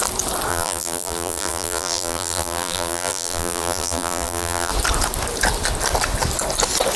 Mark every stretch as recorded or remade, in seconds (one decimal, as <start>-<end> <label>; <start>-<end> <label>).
0.0-0.5 recorded; 0.5-4.7 remade; 4.7-7.0 recorded